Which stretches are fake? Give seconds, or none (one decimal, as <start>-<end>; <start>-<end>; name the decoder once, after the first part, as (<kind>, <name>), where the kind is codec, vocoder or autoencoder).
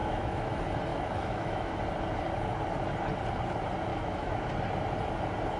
0.0-0.5 (autoencoder, DAC-VAE); 0.9-1.8; 3.9-4.5